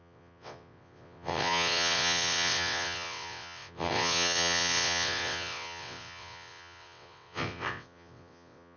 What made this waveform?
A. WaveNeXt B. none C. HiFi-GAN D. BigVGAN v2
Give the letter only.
A